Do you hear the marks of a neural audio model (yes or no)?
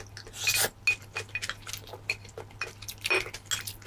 no